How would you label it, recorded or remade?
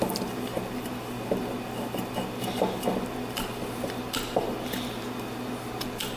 recorded